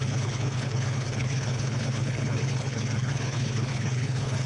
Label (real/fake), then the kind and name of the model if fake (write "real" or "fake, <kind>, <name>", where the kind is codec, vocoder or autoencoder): fake, codec, HILCodec